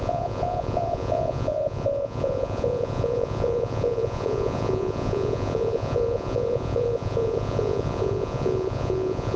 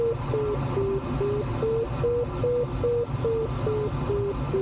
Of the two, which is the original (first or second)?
second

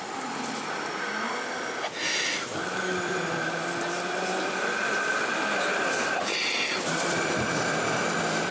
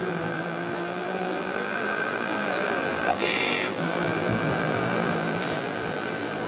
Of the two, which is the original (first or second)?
first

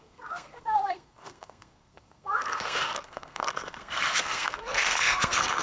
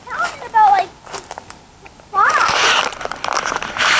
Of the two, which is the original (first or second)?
second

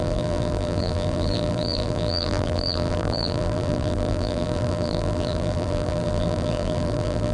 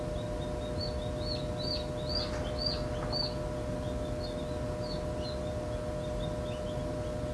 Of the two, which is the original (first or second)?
second